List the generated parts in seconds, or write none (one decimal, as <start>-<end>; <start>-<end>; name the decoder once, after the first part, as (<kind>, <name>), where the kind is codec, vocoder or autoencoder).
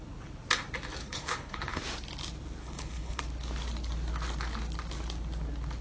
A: 1.0-1.8 (codec, HILCodec); 2.6-3.2